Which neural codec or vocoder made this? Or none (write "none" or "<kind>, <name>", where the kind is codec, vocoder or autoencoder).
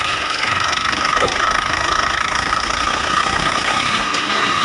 codec, SNAC